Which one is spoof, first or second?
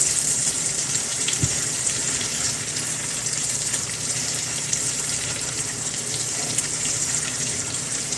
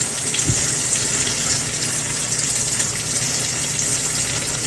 first